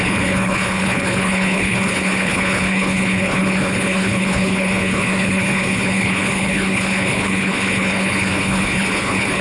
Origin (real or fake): fake